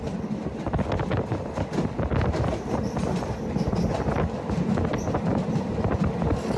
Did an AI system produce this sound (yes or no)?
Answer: no